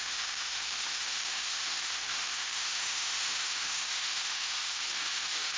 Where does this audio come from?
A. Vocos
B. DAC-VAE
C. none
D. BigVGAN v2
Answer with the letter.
B